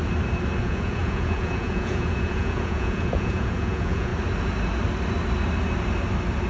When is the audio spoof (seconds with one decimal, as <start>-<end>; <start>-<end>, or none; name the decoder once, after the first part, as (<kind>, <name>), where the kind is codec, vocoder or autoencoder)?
0.6-4.1 (vocoder, Vocos)